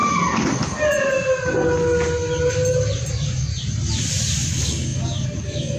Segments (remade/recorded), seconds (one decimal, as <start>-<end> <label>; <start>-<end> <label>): 0.0-3.1 recorded; 3.1-3.5 remade; 3.5-4.5 recorded; 4.5-5.8 remade